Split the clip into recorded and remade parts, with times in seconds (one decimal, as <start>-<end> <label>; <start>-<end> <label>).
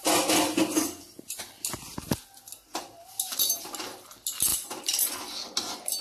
0.0-4.5 recorded; 4.5-5.1 remade; 5.1-6.0 recorded